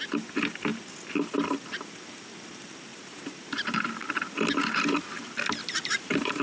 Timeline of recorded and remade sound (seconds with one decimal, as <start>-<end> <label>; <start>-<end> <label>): 0.0-2.9 recorded; 2.9-4.0 remade; 4.0-5.6 recorded; 5.6-6.4 remade